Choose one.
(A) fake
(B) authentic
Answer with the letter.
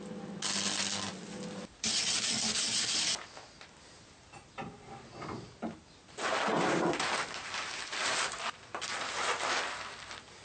B